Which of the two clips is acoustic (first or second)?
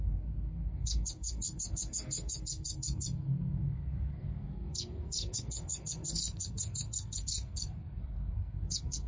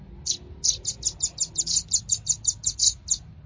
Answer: second